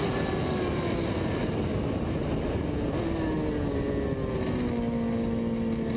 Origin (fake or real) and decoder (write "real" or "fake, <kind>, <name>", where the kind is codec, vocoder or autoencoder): real